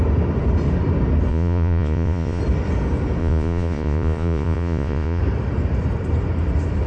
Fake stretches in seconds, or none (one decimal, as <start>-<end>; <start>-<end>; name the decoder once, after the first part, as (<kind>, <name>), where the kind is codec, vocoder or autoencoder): 1.3-2.4 (vocoder, Vocos); 3.2-5.2